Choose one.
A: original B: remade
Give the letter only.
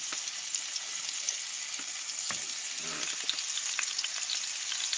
A